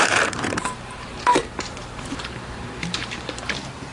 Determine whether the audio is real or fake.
fake